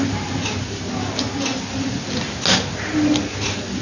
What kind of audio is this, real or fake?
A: real